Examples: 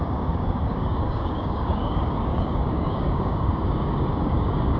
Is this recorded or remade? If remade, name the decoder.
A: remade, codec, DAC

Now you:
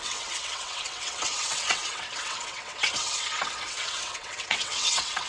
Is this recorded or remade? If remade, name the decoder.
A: remade, vocoder, WaveNeXt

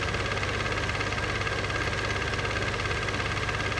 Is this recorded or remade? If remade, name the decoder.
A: recorded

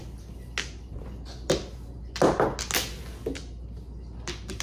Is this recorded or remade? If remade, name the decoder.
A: recorded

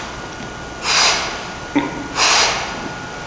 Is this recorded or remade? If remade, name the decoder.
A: recorded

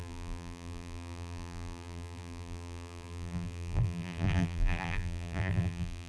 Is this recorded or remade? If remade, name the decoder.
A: remade, vocoder, BigVGAN v2